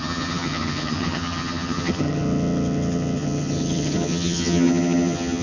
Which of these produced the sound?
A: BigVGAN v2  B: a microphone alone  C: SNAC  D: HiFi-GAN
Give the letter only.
D